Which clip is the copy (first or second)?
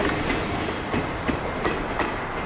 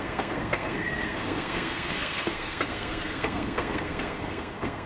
second